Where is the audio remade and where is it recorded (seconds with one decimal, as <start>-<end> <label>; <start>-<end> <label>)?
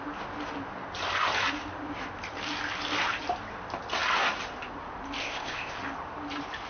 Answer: 0.0-5.2 recorded; 5.2-5.8 remade; 5.8-6.7 recorded